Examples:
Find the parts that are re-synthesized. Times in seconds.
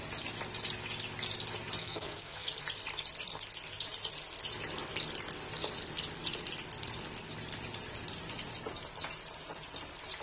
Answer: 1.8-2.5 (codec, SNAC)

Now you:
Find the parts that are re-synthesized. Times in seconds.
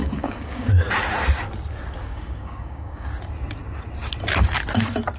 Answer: 0.0-0.7 (codec, DAC); 2.0-3.1